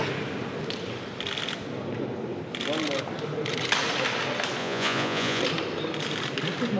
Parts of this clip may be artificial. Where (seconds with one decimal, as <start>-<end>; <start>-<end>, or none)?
4.6-5.4